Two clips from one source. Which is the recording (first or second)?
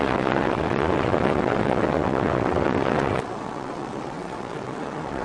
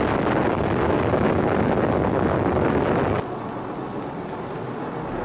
second